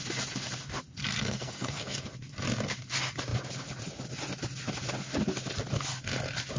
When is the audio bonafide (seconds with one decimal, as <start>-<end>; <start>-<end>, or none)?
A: 0.0-1.0; 2.1-6.6